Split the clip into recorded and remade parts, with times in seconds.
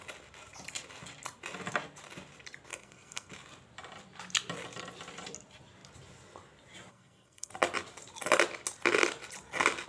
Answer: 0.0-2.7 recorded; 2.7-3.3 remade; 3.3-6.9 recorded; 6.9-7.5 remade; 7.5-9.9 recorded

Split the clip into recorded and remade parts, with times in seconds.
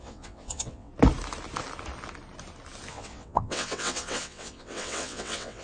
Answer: 0.0-0.9 remade; 0.9-2.9 recorded; 2.9-5.6 remade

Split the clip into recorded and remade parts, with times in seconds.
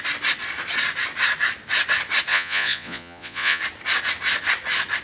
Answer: 0.0-2.3 recorded; 2.3-3.6 remade; 3.6-5.0 recorded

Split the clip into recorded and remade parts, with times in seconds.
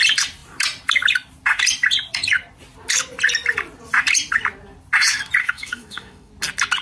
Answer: 0.0-5.4 recorded; 5.4-6.3 remade; 6.3-6.8 recorded